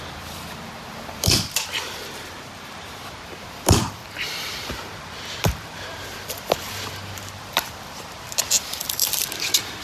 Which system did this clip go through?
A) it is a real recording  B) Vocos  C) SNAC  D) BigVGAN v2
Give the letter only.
D